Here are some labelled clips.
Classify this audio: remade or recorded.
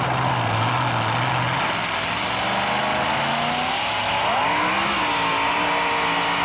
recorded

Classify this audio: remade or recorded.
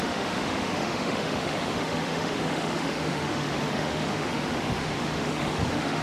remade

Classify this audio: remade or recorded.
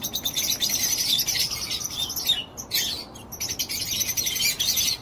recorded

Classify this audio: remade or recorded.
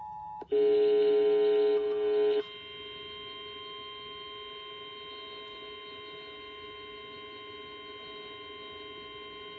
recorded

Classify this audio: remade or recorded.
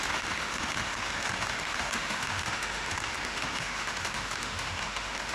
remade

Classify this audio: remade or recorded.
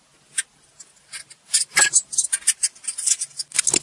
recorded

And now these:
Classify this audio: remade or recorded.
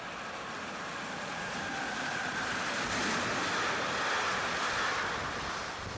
recorded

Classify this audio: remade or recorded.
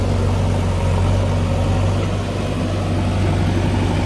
recorded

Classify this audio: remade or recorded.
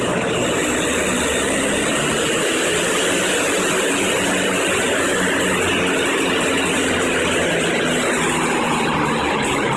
recorded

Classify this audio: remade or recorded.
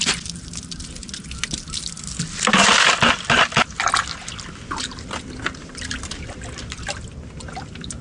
recorded